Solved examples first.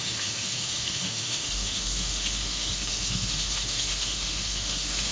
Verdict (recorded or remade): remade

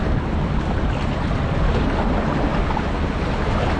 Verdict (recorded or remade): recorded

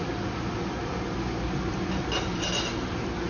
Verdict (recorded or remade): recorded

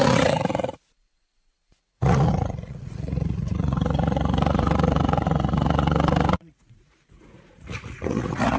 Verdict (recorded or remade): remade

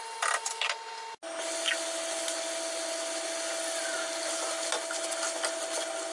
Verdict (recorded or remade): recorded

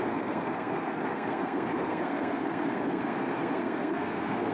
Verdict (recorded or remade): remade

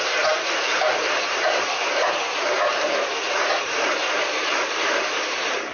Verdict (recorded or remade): remade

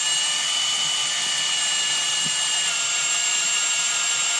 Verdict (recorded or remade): remade